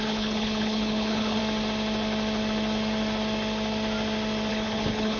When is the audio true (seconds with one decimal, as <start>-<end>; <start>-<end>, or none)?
1.4-4.5